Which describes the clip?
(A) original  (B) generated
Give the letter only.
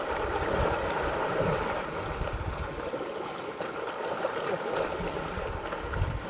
A